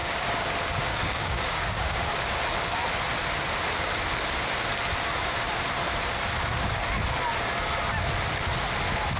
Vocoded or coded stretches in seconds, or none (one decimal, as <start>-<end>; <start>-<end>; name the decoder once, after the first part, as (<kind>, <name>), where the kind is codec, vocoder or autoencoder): 0.0-0.5 (codec, DAC); 0.9-2.1